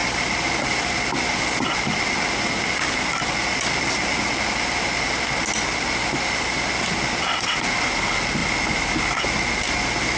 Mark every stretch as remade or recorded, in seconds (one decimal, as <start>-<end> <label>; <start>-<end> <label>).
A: 0.0-10.2 recorded